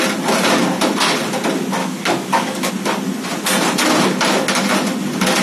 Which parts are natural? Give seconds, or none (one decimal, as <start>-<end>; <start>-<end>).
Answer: 0.0-1.8; 2.7-5.4